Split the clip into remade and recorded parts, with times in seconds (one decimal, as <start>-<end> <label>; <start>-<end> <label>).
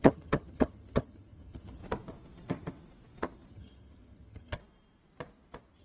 0.0-1.8 remade; 1.8-3.5 recorded; 3.5-4.6 remade; 4.6-5.8 recorded